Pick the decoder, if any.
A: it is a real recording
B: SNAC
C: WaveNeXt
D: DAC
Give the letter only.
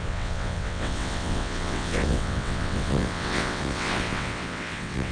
C